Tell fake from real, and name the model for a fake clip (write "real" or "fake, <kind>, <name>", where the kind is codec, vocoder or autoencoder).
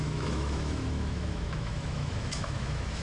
fake, autoencoder, DAC-VAE